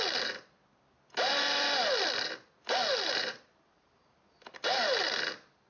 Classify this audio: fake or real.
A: real